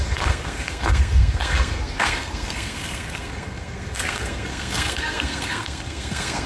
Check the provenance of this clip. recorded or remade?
remade